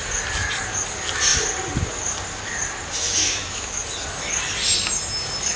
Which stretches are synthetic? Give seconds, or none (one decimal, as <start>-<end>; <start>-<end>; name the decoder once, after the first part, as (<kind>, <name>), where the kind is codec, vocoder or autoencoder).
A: 3.2-3.8 (autoencoder, DAC-VAE)